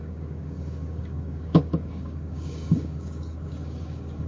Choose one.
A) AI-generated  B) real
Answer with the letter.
A